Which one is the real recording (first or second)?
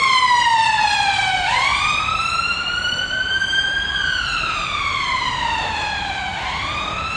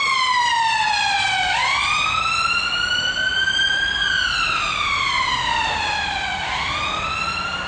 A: second